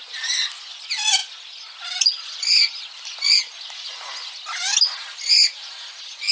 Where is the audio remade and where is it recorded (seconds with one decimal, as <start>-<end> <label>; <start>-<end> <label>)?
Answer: 0.0-6.3 recorded